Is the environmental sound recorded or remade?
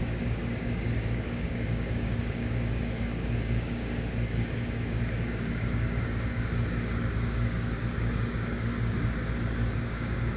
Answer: remade